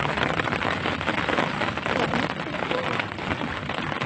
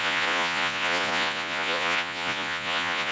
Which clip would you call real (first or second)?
first